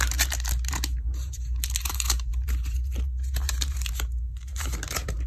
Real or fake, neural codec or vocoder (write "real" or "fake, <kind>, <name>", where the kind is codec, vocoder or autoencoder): fake, vocoder, BigVGAN v2